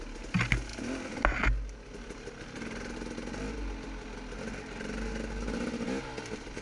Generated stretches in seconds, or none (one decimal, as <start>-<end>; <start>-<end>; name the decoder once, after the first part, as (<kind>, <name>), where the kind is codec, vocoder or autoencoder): none